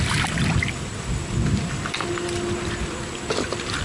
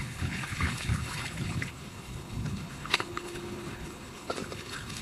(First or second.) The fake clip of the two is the second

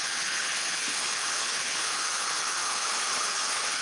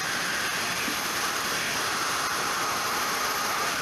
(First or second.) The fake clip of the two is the first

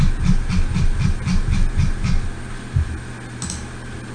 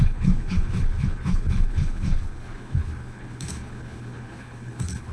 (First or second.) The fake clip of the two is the second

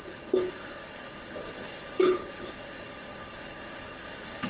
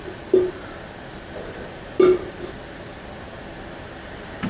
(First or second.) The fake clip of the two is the first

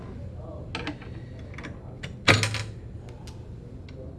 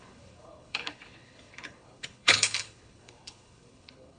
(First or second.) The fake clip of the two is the second